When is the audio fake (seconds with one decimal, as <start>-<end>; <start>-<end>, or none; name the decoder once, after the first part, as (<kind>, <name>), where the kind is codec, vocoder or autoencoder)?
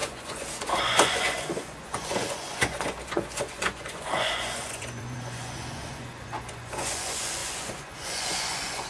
0.0-8.9 (vocoder, Vocos)